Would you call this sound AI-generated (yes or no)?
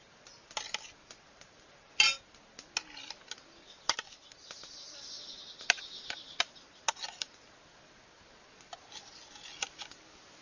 no